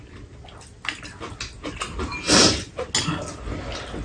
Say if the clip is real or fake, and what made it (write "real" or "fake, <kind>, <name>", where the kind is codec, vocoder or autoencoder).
real